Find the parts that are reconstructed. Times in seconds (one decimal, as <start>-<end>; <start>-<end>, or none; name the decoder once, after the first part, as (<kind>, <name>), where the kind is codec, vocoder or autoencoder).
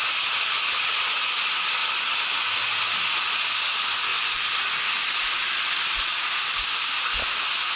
none